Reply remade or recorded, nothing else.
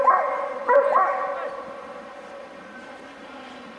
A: recorded